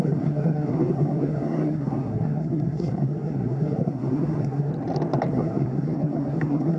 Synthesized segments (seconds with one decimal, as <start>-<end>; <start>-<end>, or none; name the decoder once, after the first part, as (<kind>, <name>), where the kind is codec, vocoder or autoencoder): 0.0-4.7 (codec, SNAC); 5.3-6.8